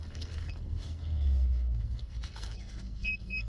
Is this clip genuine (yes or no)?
no